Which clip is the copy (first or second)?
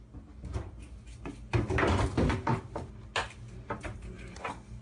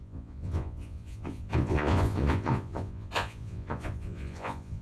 second